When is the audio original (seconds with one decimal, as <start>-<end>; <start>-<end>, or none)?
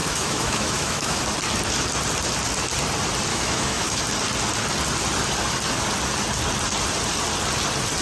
1.2-3.3; 4.0-8.0